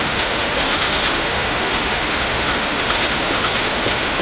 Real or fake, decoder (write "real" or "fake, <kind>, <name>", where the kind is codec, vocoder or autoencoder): fake, autoencoder, DAC-VAE